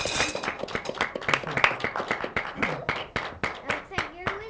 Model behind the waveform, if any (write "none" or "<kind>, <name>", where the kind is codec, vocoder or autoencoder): none